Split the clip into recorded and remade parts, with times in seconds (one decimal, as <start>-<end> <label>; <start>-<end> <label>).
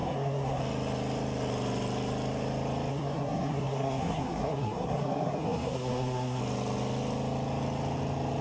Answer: 0.0-0.6 remade; 0.6-2.9 recorded; 2.9-6.4 remade; 6.4-8.4 recorded